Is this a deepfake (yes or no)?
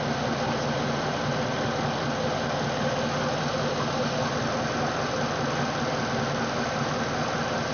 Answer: no